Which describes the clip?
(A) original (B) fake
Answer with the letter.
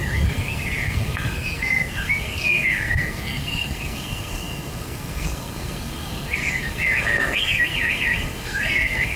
B